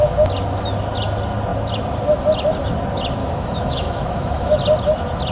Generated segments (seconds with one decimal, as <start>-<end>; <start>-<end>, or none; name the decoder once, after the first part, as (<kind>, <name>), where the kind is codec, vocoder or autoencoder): 3.2-4.5 (autoencoder, DAC-VAE)

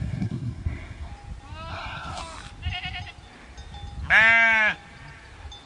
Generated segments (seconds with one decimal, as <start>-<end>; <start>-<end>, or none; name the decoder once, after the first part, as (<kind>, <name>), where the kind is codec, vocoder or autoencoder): 0.0-1.1 (codec, SNAC); 1.7-2.2

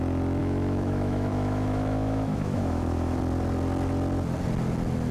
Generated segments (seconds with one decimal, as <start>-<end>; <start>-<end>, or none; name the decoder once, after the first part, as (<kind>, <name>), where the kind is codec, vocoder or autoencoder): 0.4-3.2 (autoencoder, DAC-VAE)

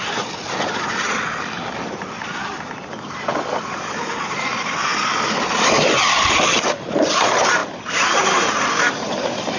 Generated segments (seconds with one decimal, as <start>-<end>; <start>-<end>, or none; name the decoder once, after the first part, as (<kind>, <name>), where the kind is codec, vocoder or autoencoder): none